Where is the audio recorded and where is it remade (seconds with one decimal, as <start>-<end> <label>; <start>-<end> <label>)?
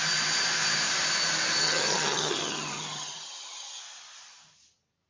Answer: 0.0-1.6 recorded; 1.6-3.8 remade; 3.8-5.1 recorded